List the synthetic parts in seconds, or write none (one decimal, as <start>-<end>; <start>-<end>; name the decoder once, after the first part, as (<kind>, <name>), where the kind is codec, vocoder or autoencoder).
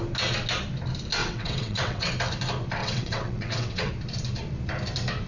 1.2-2.1 (vocoder, WaveNeXt); 2.8-3.9